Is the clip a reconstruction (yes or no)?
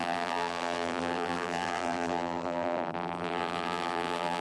yes